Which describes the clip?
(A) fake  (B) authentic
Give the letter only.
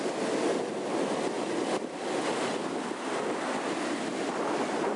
B